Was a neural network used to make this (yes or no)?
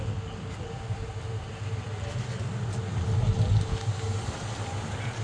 no